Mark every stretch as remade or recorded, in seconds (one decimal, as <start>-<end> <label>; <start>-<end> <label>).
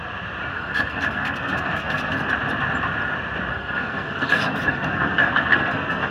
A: 0.0-0.5 recorded; 0.5-2.3 remade; 2.3-3.5 recorded; 3.5-6.1 remade